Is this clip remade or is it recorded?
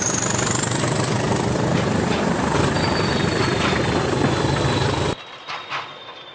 recorded